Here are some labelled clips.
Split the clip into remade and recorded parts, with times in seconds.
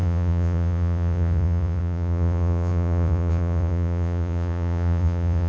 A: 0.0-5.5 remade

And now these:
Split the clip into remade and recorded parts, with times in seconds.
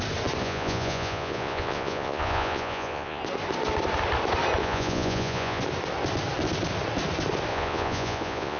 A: 0.0-0.4 recorded; 0.4-3.2 remade; 3.2-4.6 recorded; 4.6-5.6 remade; 5.6-7.5 recorded; 7.5-8.6 remade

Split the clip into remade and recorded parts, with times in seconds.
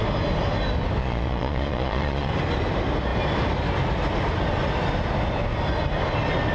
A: 0.0-1.0 recorded; 1.0-2.3 remade; 2.3-6.5 recorded